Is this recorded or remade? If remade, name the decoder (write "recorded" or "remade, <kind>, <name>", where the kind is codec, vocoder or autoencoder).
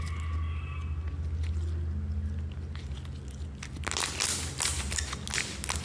recorded